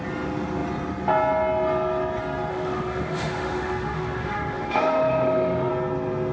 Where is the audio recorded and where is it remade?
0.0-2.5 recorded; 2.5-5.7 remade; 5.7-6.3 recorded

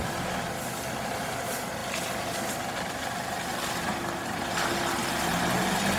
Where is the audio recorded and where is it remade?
0.0-6.0 recorded

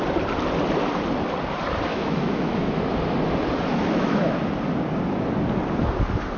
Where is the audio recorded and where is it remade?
0.0-1.9 recorded; 1.9-2.7 remade; 2.7-3.7 recorded; 3.7-4.4 remade; 4.4-6.4 recorded

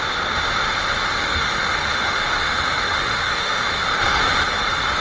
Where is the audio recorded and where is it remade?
0.0-1.2 recorded; 1.2-4.2 remade; 4.2-5.0 recorded

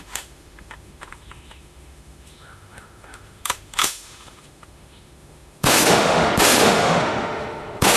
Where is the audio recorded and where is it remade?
0.0-8.0 remade